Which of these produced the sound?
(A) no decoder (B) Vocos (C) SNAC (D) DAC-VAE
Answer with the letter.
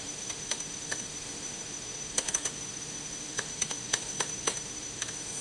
D